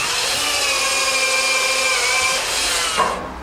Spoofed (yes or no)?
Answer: no